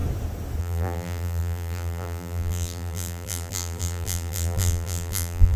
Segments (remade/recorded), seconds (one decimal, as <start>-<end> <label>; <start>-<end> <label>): 0.0-0.6 recorded; 0.6-5.6 remade